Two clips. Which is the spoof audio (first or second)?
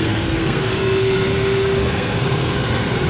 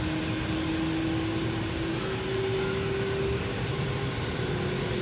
first